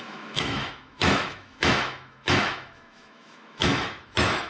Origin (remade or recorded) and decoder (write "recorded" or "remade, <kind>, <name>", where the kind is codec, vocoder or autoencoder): remade, autoencoder, DAC-VAE